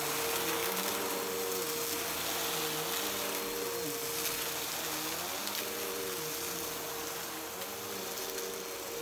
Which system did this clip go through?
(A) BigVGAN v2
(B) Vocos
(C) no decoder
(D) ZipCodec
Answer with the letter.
C